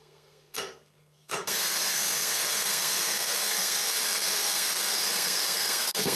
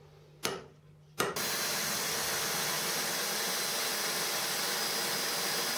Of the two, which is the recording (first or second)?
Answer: second